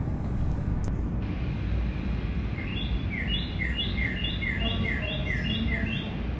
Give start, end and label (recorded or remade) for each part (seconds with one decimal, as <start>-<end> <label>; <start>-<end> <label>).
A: 0.0-0.7 remade; 0.7-1.5 recorded; 1.5-2.7 remade; 2.7-3.6 recorded; 3.6-4.2 remade; 4.2-6.4 recorded